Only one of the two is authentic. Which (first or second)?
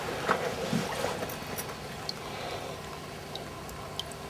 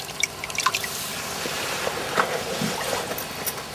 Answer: first